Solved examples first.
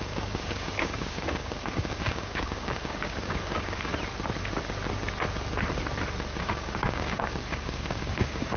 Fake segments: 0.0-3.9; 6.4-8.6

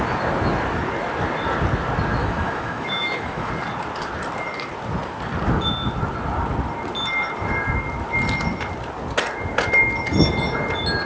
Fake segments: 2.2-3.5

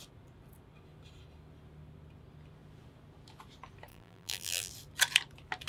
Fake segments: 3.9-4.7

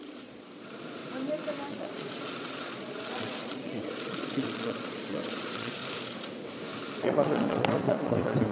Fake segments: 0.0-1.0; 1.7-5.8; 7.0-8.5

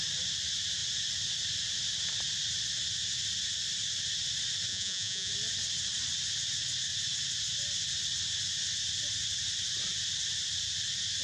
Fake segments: 4.7-5.3

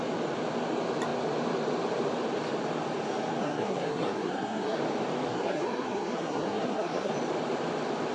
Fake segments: 3.4-4.8; 5.3-7.1